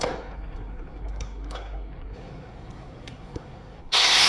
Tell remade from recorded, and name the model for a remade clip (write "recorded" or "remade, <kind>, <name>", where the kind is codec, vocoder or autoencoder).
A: remade, codec, SNAC